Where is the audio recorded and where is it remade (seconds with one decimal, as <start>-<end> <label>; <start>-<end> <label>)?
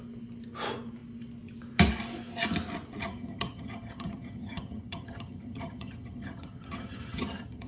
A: 0.0-3.0 recorded; 3.0-7.7 remade